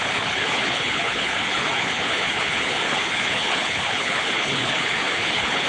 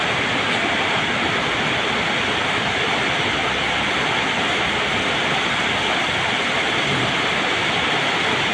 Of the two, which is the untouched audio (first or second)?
second